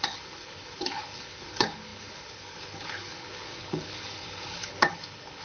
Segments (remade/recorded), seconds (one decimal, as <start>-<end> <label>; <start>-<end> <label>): 0.0-5.4 remade